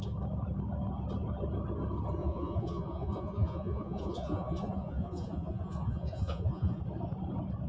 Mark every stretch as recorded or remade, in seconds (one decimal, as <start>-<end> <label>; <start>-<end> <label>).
0.0-2.2 recorded; 2.2-6.8 remade; 6.8-7.7 recorded